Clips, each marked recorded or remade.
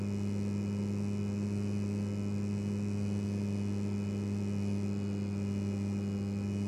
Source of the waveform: recorded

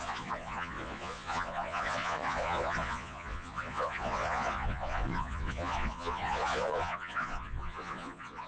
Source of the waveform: remade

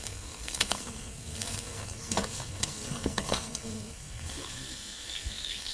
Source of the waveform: remade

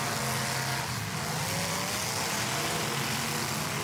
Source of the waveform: recorded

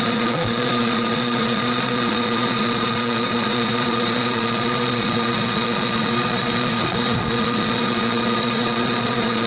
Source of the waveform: remade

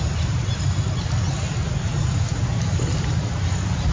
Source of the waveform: recorded